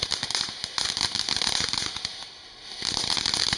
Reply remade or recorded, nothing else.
recorded